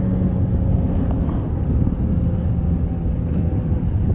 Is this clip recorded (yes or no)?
yes